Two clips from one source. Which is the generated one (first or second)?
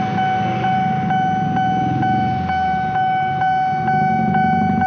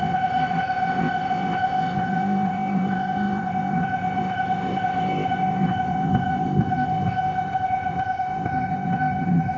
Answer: second